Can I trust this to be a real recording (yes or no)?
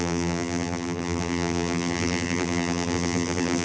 no